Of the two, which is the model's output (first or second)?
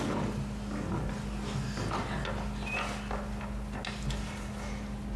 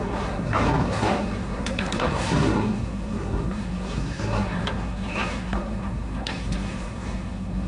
second